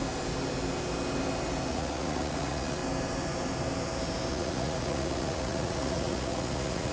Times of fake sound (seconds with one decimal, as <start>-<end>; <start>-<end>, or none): 1.7-2.8; 4.3-6.9